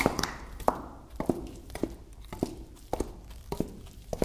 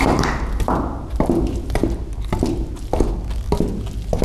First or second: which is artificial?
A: first